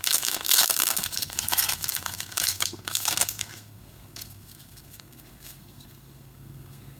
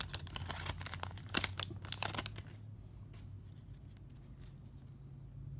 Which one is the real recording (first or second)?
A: second